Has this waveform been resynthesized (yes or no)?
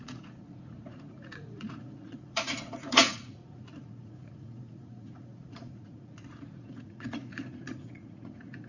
yes